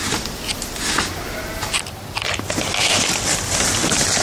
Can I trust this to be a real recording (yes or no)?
yes